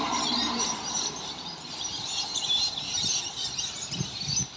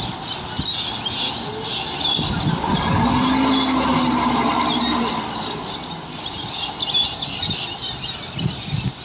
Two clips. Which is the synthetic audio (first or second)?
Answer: first